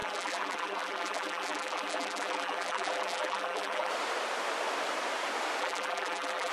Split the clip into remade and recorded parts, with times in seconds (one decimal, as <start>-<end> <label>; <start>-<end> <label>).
0.0-3.9 remade; 3.9-5.6 recorded; 5.6-6.5 remade